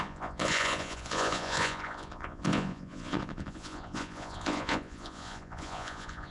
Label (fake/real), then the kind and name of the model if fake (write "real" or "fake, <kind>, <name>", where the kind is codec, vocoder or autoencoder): fake, vocoder, Vocos